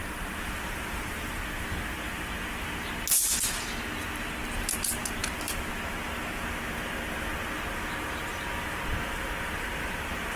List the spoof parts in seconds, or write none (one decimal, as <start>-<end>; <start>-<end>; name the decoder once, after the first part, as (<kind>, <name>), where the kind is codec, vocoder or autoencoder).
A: 0.0-1.4 (vocoder, BigVGAN v2)